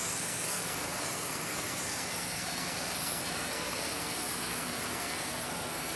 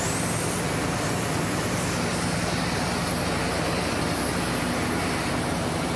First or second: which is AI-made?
first